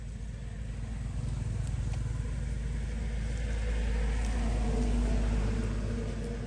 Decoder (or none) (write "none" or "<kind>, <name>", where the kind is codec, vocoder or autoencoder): none